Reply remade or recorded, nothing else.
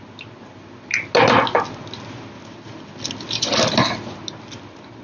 recorded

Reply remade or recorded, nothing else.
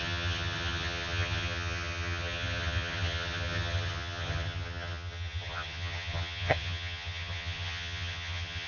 remade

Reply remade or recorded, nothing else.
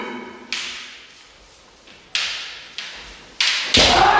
recorded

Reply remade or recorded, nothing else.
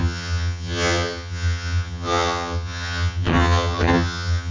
remade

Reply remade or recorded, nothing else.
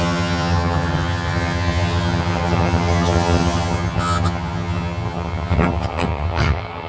remade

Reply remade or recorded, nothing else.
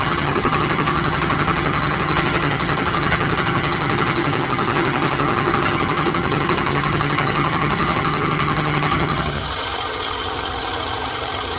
remade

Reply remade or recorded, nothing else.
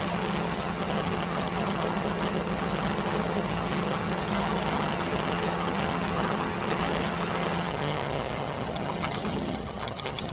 remade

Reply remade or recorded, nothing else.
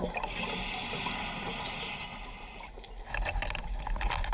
recorded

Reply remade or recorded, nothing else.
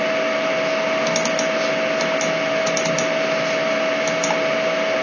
recorded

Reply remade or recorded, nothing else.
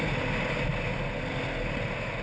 recorded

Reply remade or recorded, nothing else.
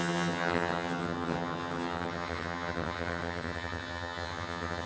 remade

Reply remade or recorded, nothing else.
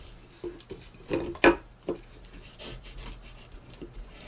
recorded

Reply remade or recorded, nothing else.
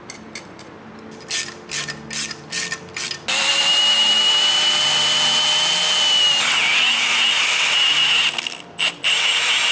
recorded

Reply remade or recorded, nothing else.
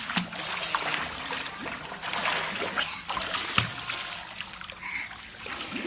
recorded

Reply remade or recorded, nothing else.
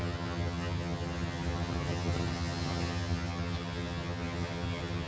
remade